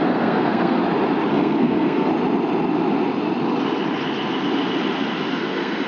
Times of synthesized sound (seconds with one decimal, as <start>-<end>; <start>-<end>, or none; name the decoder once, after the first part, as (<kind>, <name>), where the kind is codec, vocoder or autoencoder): 0.0-0.8 (codec, SNAC); 1.3-2.1; 5.3-5.9